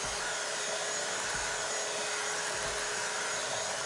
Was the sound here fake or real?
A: real